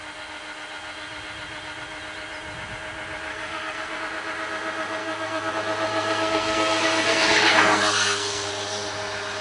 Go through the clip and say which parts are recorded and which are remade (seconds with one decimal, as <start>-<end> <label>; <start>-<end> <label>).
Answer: 0.0-3.3 recorded; 3.3-4.0 remade; 4.0-5.0 recorded; 5.0-5.5 remade; 5.5-5.9 recorded; 5.9-8.5 remade; 8.5-9.4 recorded